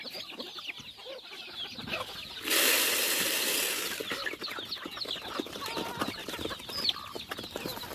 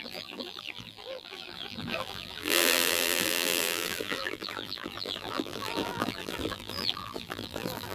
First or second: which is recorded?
first